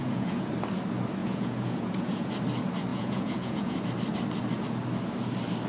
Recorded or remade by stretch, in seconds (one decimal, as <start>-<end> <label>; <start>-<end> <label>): 0.0-0.5 remade; 0.5-1.2 recorded; 1.2-2.3 remade; 2.3-2.9 recorded; 2.9-3.8 remade; 3.8-5.7 recorded